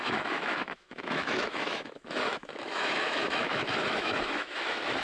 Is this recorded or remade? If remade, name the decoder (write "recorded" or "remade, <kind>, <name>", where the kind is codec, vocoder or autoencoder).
remade, autoencoder, DAC-VAE